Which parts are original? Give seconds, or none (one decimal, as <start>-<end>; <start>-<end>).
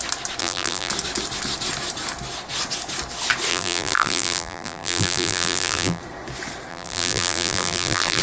0.0-0.4; 0.9-3.5; 6.0-6.7